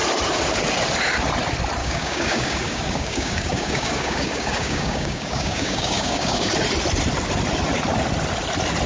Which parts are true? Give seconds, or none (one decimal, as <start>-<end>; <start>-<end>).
0.0-1.8; 6.5-8.9